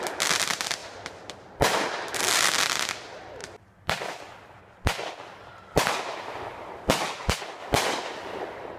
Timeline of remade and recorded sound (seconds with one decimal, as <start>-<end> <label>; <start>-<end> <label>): 0.0-3.4 recorded; 3.4-4.6 remade; 4.6-6.6 recorded; 6.6-7.2 remade; 7.2-8.8 recorded